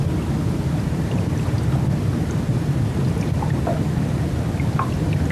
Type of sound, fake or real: real